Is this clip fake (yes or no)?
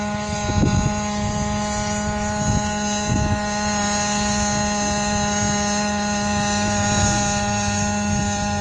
no